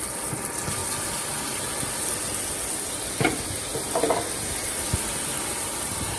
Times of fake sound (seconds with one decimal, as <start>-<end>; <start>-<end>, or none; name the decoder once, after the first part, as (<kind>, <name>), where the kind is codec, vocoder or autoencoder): none